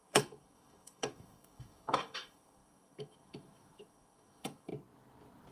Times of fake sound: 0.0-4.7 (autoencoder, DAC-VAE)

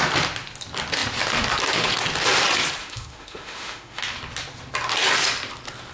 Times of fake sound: 2.8-4.0 (autoencoder, DAC-VAE)

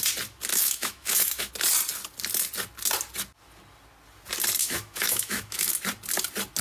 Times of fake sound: 0.5-1.5 (autoencoder, DAC-VAE); 4.6-5.7

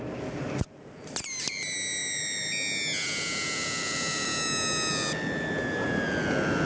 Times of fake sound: none

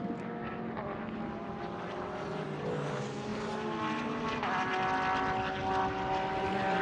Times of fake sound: none

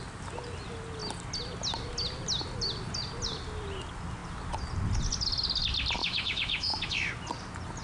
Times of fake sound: 6.0-7.1 (autoencoder, DAC-VAE)